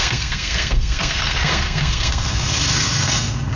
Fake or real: fake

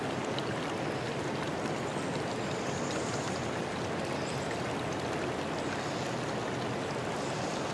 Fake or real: real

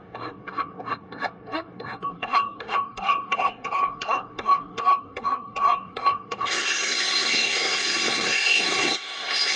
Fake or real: fake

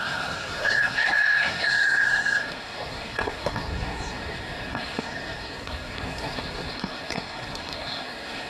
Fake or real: fake